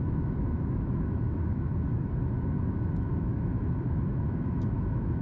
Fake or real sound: fake